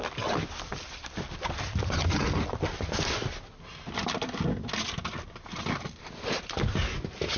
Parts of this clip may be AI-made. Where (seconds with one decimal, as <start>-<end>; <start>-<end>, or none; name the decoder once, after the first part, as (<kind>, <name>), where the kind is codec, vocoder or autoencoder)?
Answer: none